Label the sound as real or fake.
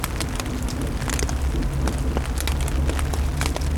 real